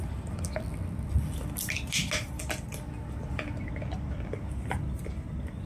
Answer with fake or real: real